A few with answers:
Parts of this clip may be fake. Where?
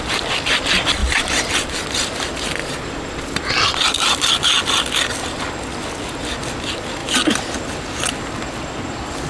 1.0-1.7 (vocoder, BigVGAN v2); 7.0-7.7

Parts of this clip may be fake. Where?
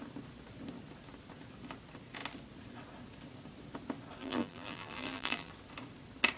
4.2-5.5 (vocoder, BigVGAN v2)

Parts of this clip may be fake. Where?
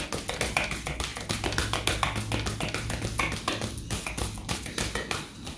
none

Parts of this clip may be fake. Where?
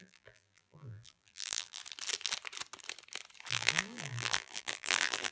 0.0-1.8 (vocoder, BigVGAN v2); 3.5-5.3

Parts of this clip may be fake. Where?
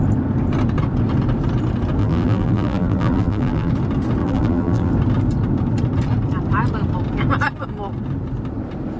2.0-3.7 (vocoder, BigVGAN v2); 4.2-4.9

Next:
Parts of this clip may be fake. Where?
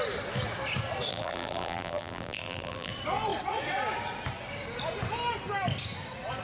1.1-2.9 (vocoder, BigVGAN v2)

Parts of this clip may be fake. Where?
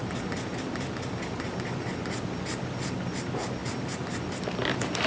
3.6-5.1 (vocoder, BigVGAN v2)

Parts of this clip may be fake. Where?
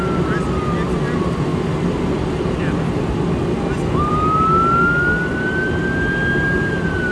none